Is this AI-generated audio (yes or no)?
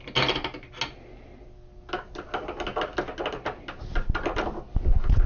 no